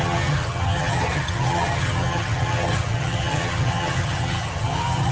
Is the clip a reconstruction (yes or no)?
yes